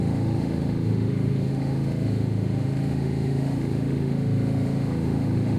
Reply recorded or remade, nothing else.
remade